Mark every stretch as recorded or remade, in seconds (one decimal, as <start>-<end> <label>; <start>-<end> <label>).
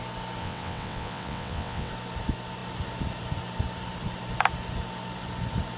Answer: 0.0-0.4 recorded; 0.4-1.9 remade; 1.9-5.8 recorded